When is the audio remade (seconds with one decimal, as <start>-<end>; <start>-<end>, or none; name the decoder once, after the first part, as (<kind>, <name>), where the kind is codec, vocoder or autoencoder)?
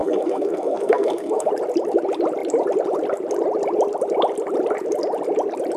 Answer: 0.0-1.5 (codec, SNAC)